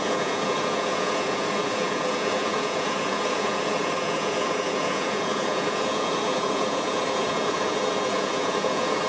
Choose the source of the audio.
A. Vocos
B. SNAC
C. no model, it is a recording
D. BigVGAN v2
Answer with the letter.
A